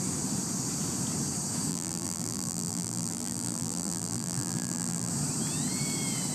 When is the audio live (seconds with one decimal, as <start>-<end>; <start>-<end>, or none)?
0.0-1.7; 5.1-6.3